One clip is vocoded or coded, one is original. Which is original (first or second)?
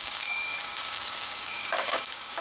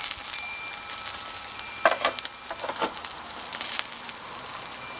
second